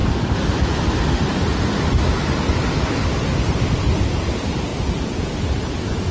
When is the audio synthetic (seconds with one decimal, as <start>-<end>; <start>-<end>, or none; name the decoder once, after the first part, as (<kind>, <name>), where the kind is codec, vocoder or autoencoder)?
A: 4.7-6.1 (vocoder, BigVGAN v2)